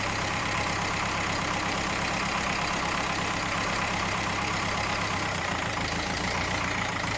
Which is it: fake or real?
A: fake